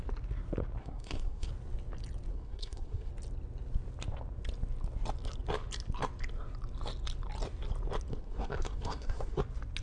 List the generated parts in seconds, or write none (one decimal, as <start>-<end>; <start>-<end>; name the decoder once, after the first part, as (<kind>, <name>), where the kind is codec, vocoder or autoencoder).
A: 0.8-1.5 (codec, SNAC); 2.3-3.1; 8.1-9.4